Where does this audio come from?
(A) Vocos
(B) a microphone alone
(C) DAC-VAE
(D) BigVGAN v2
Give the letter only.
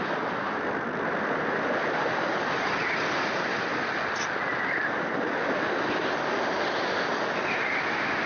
B